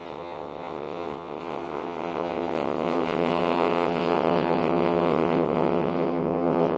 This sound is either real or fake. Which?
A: fake